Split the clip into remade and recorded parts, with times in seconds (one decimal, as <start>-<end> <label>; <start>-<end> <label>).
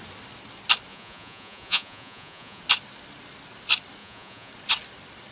0.0-0.9 recorded; 0.9-2.6 remade; 2.6-4.0 recorded; 4.0-4.5 remade; 4.5-5.3 recorded